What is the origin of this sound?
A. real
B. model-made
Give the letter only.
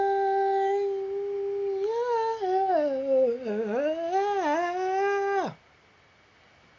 A